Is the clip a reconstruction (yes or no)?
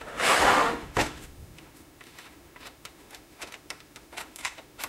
yes